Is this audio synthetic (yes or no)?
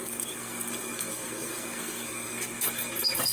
yes